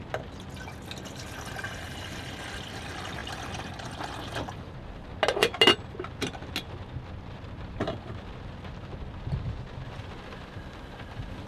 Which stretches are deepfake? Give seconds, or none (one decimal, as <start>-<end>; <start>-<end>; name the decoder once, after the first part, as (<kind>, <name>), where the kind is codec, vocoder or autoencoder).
none